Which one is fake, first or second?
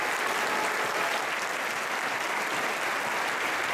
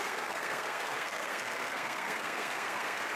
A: second